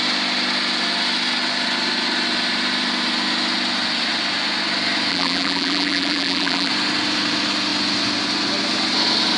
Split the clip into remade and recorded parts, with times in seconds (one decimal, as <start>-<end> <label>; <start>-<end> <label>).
0.0-5.1 recorded; 5.1-6.7 remade; 6.7-9.4 recorded